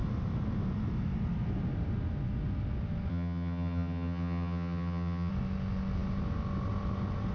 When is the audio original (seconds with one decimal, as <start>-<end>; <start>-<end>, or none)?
0.0-3.1; 5.3-7.3